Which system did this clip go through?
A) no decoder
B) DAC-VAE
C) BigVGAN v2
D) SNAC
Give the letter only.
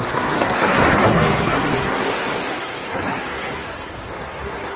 D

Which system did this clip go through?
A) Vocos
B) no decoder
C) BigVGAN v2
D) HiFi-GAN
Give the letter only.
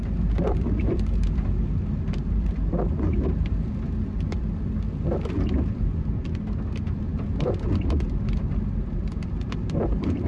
C